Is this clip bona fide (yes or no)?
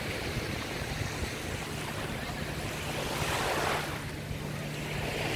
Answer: yes